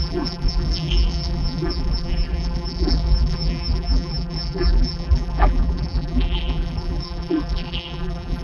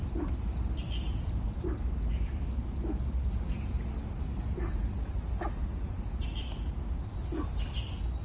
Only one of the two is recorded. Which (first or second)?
second